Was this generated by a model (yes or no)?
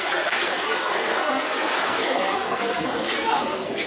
yes